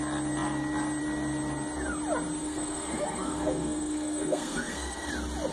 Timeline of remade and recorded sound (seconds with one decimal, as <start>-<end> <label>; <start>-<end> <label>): 0.0-2.4 recorded; 2.4-5.1 remade; 5.1-5.5 recorded